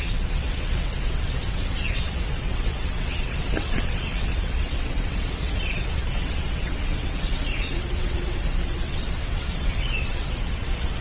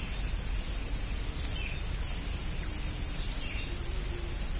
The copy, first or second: first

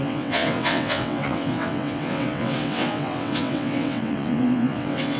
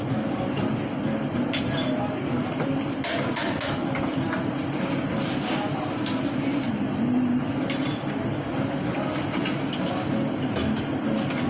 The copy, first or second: first